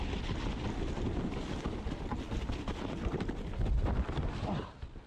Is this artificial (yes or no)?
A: no